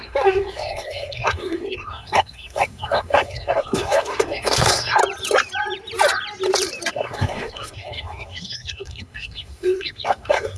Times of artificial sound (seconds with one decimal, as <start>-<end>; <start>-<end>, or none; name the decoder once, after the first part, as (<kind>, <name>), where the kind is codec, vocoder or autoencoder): 0.0-5.0 (codec, SNAC); 6.9-10.6